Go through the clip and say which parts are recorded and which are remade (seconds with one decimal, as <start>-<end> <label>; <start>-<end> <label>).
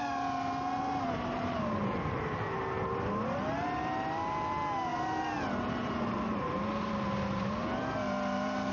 0.0-8.7 recorded